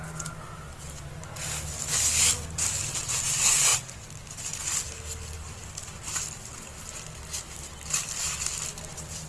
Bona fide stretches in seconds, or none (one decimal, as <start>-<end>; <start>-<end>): 0.0-9.3